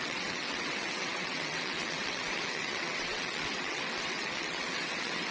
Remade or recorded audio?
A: remade